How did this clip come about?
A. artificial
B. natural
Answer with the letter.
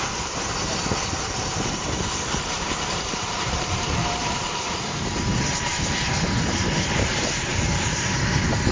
A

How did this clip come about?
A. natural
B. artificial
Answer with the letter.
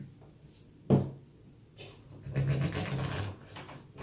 A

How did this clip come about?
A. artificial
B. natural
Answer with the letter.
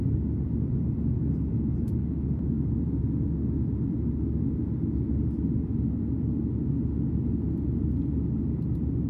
B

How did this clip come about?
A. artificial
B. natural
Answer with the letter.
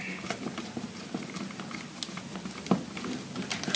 B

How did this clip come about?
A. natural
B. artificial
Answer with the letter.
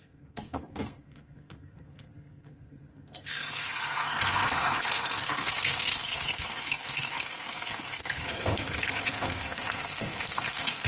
B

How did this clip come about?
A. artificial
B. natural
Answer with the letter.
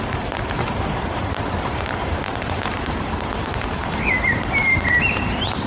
A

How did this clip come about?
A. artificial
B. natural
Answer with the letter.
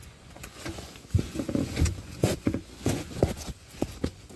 A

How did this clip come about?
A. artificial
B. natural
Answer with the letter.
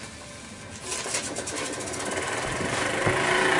B